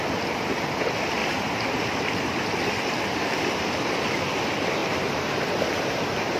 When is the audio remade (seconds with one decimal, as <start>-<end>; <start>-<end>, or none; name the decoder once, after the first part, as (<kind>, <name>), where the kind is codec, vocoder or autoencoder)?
1.2-3.9 (vocoder, BigVGAN v2); 4.8-5.6